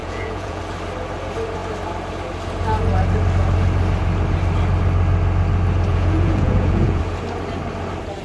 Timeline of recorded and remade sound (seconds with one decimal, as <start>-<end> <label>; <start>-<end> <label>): 0.0-0.6 remade; 0.6-5.9 recorded; 5.9-7.0 remade; 7.0-8.2 recorded